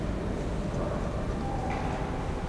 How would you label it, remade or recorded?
recorded